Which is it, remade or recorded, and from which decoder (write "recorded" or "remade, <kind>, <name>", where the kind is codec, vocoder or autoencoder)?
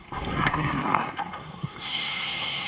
remade, codec, SNAC